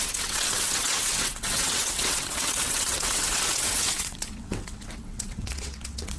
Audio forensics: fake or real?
fake